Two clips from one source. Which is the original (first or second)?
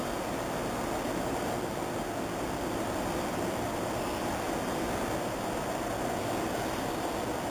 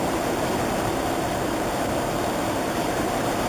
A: first